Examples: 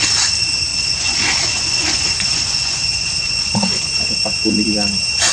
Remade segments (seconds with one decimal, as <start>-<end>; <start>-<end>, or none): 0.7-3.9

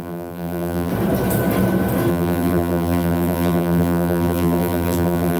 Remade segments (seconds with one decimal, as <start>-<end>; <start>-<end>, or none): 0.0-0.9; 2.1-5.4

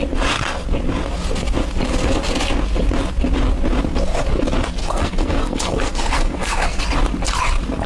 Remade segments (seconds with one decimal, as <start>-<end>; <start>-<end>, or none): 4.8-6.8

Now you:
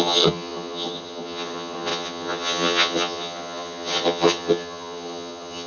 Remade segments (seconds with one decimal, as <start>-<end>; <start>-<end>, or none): 0.0-5.7

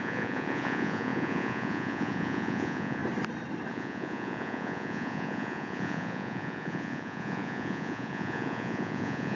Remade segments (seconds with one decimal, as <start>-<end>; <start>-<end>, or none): 0.0-3.0; 3.7-9.4